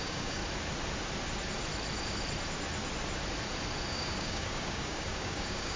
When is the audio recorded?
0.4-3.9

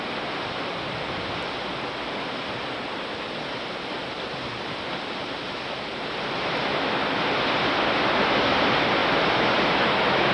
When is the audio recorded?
0.0-10.3

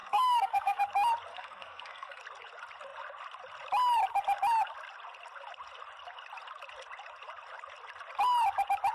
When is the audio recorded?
0.8-1.3; 2.2-8.9

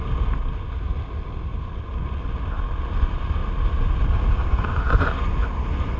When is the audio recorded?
0.0-6.0

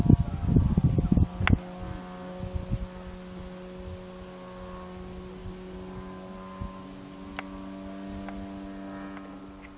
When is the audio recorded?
0.0-9.8

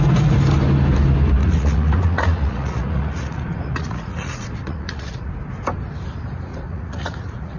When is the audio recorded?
0.0-1.4; 5.3-6.5